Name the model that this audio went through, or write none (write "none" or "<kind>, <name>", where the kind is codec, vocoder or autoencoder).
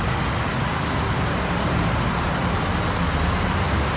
none